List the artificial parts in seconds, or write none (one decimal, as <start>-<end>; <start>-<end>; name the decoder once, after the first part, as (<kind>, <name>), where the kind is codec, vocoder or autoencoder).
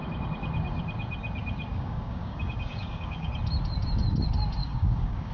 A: 1.7-3.3 (codec, DAC); 4.6-5.3